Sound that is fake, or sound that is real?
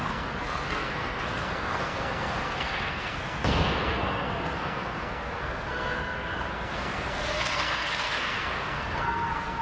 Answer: fake